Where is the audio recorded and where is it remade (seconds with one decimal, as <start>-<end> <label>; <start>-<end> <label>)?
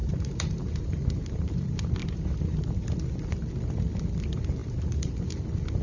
0.0-1.5 remade; 1.5-2.0 recorded; 2.0-2.6 remade; 2.6-4.6 recorded; 4.6-5.1 remade; 5.1-5.8 recorded